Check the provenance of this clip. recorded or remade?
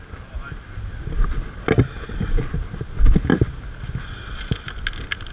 recorded